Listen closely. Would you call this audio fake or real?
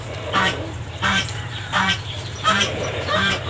fake